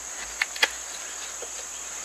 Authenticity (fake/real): real